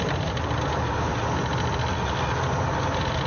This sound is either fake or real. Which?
real